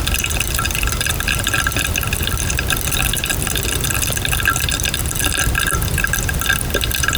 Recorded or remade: recorded